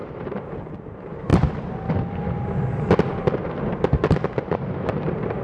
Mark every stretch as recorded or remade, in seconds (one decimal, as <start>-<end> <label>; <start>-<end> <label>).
0.0-1.3 remade; 1.3-4.4 recorded; 4.4-5.4 remade